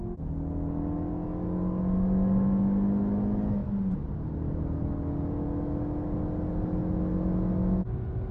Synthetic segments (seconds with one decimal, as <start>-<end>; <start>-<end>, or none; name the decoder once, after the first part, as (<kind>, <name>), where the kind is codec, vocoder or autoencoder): none